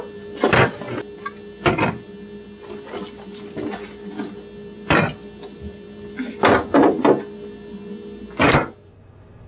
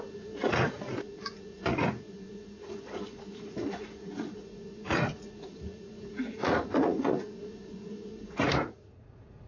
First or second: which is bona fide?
first